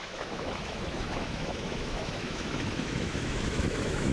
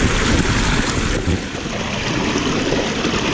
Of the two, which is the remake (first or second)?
first